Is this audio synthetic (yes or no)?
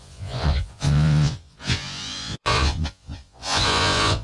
yes